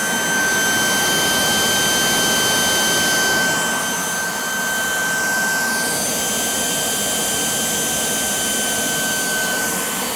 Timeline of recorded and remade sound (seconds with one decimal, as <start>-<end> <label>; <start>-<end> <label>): 0.0-10.2 recorded